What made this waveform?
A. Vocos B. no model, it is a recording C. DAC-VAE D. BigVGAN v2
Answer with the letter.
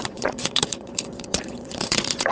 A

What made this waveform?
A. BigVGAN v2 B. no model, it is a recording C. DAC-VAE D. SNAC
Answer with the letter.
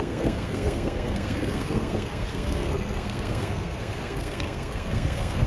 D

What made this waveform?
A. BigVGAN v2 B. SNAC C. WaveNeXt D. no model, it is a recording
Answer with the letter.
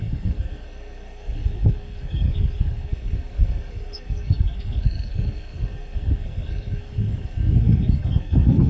B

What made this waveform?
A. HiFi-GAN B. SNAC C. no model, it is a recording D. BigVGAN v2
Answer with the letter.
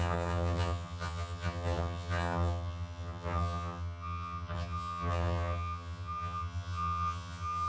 A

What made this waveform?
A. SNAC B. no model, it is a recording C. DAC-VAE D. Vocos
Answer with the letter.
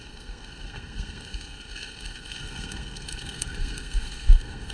A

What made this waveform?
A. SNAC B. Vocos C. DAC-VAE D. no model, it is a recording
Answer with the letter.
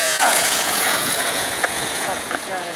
B